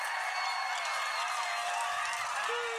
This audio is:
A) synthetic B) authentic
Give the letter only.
B